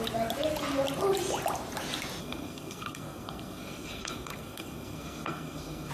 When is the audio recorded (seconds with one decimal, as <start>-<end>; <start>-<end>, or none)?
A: 0.0-2.2